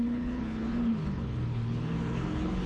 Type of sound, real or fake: fake